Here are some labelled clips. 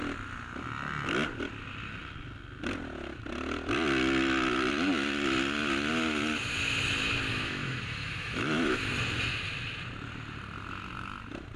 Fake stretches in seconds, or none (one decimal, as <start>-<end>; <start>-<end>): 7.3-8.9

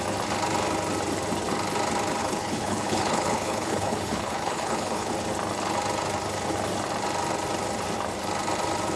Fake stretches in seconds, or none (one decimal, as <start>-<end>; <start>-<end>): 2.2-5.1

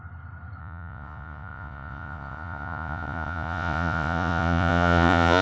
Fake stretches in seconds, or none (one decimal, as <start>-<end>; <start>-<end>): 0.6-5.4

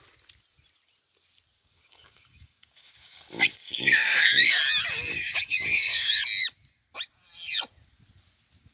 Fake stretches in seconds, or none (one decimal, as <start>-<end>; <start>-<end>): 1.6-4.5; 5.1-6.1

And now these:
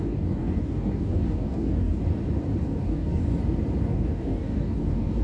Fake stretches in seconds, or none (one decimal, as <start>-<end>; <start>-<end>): 0.0-2.0; 2.6-3.3; 3.8-5.2

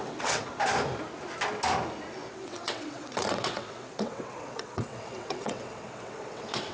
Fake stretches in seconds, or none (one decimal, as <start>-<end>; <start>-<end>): 0.0-0.5; 2.3-6.7

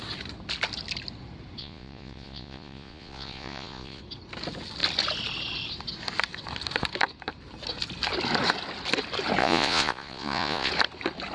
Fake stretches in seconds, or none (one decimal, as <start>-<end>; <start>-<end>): 1.6-4.0; 9.4-10.7

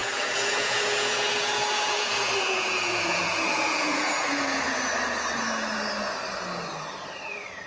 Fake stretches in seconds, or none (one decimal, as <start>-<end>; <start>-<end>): 0.0-4.6